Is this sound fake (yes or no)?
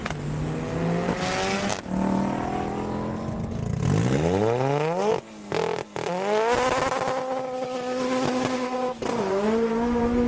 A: no